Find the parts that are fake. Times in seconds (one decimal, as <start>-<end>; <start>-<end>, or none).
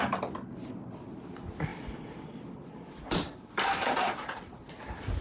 none